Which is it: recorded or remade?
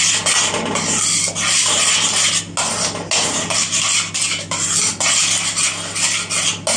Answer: recorded